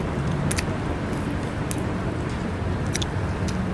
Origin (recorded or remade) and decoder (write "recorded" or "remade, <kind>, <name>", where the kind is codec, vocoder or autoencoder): recorded